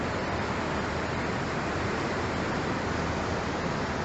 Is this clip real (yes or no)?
yes